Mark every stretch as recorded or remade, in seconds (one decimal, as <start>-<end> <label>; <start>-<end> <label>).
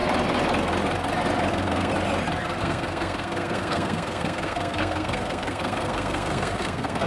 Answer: 0.0-1.5 recorded; 1.5-1.9 remade; 1.9-2.6 recorded; 2.6-7.1 remade